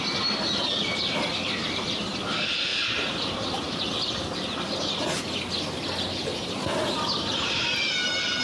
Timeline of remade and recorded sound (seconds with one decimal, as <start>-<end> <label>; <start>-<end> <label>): 0.0-8.4 recorded